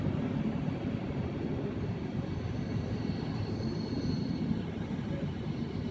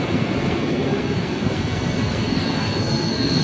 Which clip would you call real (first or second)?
first